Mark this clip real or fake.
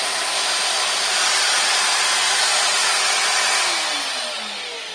real